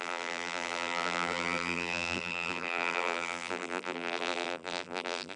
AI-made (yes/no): yes